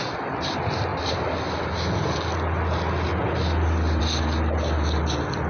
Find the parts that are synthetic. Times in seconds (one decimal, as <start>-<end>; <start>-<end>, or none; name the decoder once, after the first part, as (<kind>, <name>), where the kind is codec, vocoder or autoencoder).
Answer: none